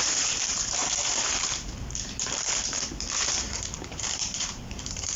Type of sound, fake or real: fake